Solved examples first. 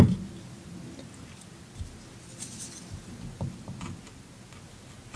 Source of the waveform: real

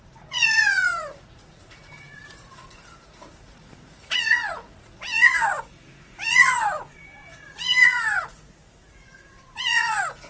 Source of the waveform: fake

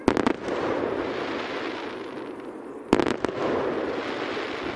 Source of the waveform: real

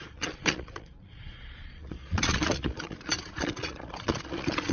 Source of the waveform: fake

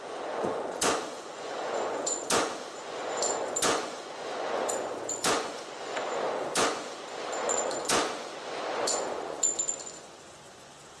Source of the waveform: fake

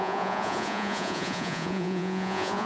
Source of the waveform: fake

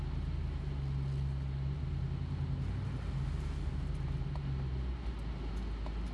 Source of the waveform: real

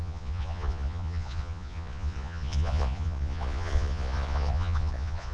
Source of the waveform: fake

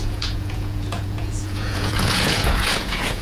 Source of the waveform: fake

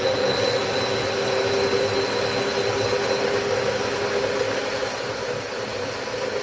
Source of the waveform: real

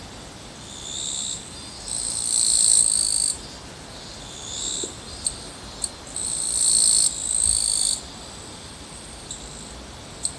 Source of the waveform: real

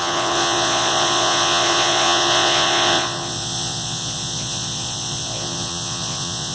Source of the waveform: fake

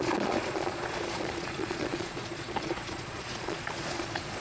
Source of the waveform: fake